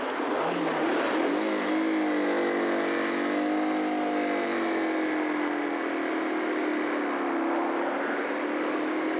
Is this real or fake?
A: real